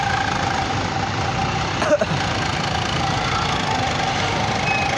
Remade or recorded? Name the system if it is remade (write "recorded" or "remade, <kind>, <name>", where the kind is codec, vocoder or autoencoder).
recorded